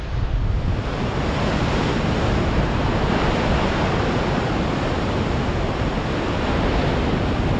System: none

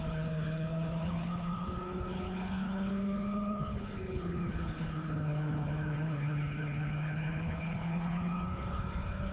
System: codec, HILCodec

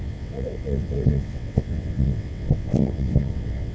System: vocoder, WaveNeXt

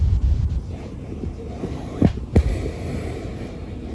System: none